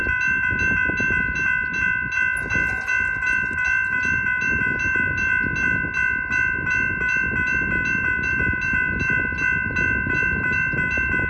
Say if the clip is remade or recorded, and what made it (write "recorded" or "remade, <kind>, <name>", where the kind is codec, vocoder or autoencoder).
recorded